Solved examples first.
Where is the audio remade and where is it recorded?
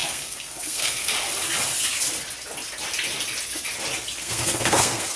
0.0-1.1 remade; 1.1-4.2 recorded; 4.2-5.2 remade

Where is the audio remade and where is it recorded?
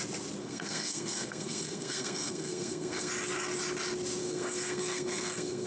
0.0-0.4 recorded; 0.4-3.1 remade; 3.1-4.2 recorded; 4.2-5.7 remade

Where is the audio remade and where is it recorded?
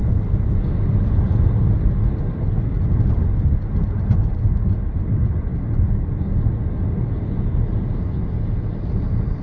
0.0-9.4 recorded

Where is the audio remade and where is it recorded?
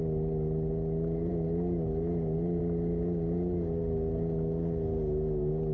0.0-5.7 recorded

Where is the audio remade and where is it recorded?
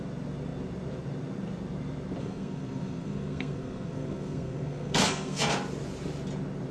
0.0-2.2 recorded; 2.2-5.4 remade; 5.4-6.7 recorded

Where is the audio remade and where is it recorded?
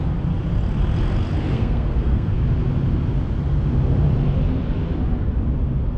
0.0-1.5 recorded; 1.5-2.3 remade; 2.3-6.0 recorded